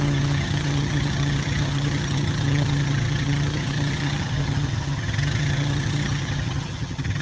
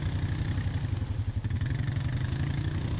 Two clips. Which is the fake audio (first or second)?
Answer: first